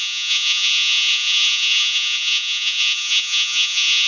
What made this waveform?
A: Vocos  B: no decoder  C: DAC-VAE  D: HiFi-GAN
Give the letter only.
A